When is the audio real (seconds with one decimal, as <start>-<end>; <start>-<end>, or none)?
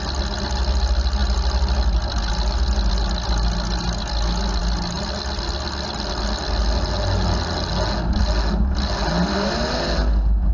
0.0-10.5